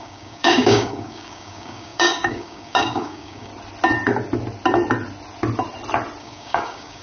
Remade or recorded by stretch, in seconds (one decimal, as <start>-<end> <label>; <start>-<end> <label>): 0.0-3.5 remade; 3.5-6.2 recorded; 6.2-7.0 remade